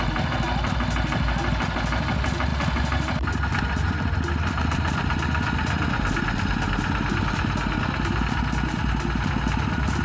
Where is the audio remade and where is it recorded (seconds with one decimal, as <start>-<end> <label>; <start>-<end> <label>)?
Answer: 0.0-10.0 recorded